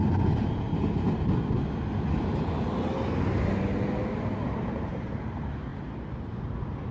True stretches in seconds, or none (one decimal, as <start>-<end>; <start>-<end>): 0.0-6.9